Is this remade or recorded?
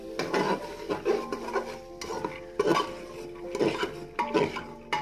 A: recorded